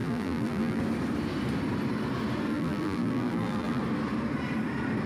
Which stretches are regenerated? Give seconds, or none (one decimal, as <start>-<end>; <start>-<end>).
0.0-0.8; 2.5-3.8